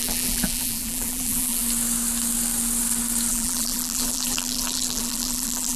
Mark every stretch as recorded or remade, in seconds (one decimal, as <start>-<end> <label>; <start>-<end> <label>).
0.0-1.6 remade; 1.6-3.3 recorded; 3.3-5.8 remade